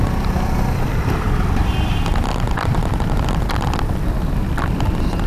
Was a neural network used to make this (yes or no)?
no